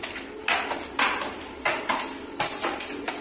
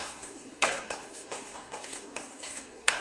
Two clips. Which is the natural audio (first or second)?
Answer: first